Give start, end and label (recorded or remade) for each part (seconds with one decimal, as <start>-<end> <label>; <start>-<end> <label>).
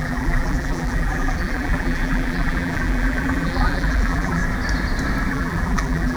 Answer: 0.0-4.4 remade; 4.4-5.3 recorded; 5.3-6.2 remade